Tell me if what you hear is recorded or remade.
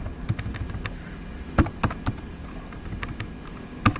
recorded